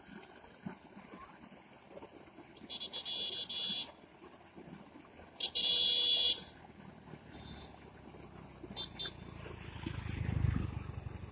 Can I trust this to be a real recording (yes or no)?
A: yes